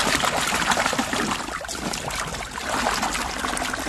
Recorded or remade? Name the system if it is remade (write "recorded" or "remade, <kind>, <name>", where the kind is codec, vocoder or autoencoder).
recorded